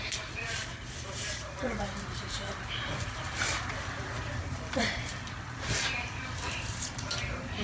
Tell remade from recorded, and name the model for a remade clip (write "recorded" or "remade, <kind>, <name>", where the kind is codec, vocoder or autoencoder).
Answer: remade, vocoder, BigVGAN v2